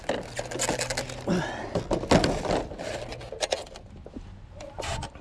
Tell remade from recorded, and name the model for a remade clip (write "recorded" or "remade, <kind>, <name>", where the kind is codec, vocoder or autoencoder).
recorded